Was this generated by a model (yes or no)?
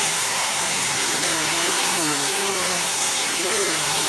yes